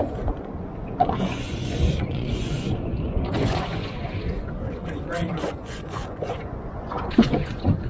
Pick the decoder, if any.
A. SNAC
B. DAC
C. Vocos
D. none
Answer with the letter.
C